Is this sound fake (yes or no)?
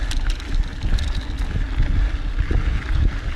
no